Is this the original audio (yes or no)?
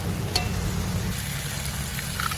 yes